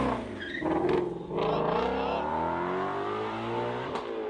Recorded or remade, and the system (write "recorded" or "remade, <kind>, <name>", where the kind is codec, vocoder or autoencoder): recorded